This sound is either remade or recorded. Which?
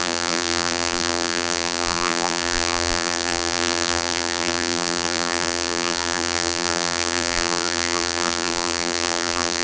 remade